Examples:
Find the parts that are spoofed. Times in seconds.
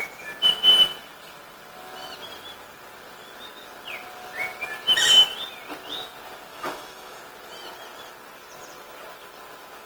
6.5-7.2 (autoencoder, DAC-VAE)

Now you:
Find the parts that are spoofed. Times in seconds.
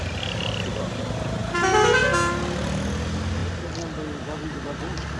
none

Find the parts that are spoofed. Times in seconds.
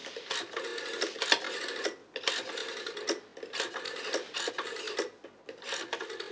none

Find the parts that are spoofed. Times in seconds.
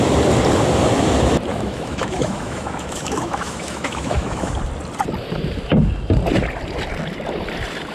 1.5-4.5 (autoencoder, DAC-VAE)